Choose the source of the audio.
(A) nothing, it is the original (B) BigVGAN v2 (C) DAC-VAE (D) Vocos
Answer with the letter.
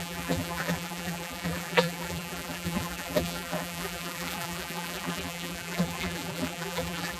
B